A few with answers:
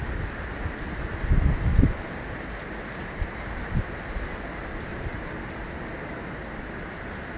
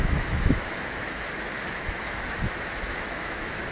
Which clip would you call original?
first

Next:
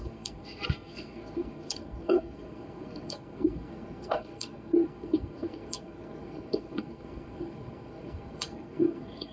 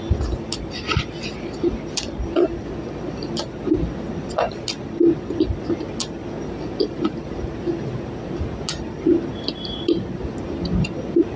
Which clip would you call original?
second